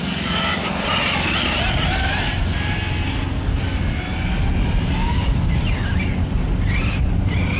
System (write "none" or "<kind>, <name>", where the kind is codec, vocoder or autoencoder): none